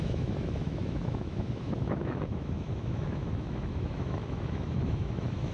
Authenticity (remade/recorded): remade